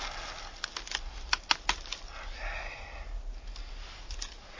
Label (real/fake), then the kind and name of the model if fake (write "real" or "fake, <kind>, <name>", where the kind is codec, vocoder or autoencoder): real